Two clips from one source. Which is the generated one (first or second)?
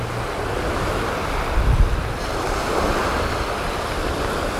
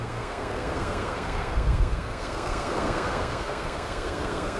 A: second